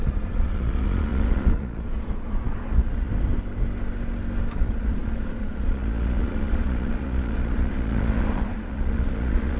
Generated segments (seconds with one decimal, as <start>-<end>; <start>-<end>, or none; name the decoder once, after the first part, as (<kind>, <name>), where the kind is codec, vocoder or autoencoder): 0.0-3.1 (vocoder, Vocos); 4.5-9.6